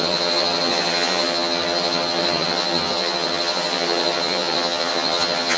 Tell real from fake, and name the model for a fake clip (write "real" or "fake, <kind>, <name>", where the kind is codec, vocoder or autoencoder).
fake, vocoder, HiFi-GAN